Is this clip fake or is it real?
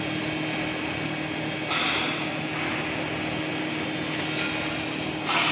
real